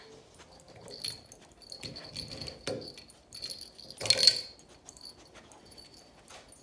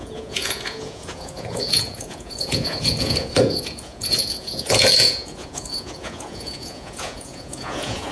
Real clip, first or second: first